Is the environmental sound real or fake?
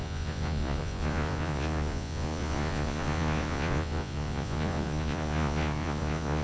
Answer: fake